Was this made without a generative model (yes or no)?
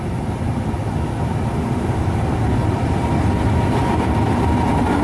yes